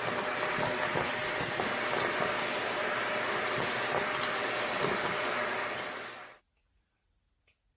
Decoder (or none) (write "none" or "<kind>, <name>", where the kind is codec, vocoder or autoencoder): none